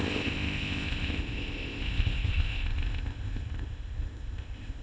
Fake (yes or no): yes